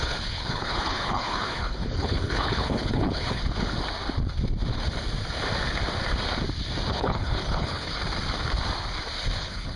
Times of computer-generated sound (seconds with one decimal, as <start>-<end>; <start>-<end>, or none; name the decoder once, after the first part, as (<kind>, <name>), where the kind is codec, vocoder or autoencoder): 0.0-3.4 (codec, HILCodec); 6.9-8.0; 9.4-9.8